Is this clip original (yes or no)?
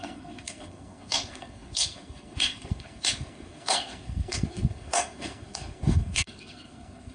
no